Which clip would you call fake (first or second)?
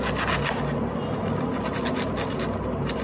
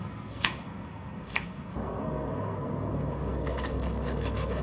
second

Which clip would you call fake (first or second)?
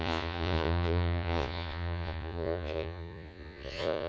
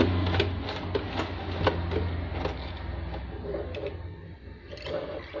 first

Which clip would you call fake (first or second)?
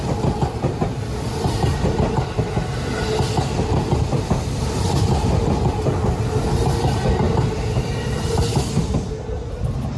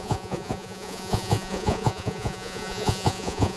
second